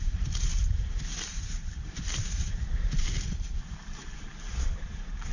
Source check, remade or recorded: remade